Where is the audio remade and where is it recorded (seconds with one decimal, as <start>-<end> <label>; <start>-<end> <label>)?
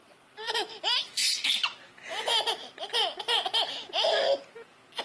0.0-0.7 remade; 0.7-5.0 recorded